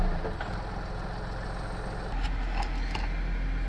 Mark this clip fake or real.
real